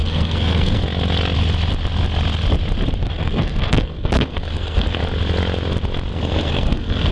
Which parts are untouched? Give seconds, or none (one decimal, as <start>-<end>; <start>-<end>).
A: 0.8-3.0; 5.0-6.1